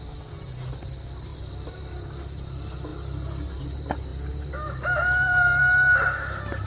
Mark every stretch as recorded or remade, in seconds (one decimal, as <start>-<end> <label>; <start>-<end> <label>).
0.0-6.7 recorded